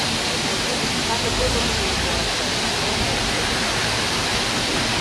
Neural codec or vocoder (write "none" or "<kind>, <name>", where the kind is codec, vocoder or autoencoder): vocoder, BigVGAN v2